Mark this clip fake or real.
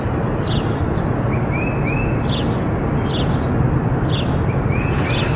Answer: real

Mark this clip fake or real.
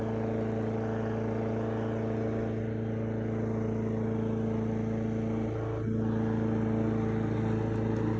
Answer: real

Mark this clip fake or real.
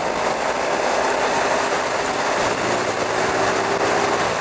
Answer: real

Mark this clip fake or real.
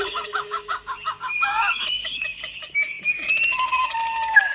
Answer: fake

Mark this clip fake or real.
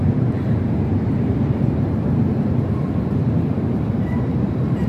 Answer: fake